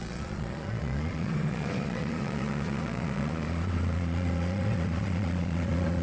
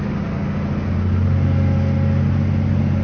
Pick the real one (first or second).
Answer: second